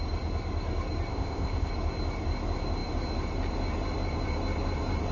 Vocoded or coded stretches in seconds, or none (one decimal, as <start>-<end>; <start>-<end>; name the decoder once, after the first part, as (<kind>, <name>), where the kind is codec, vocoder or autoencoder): 1.1-1.7 (codec, ZipCodec)